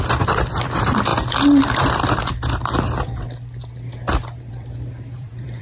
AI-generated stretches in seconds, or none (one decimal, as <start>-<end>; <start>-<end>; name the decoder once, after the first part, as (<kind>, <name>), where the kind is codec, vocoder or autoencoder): 0.0-1.1 (vocoder, BigVGAN v2); 4.5-5.6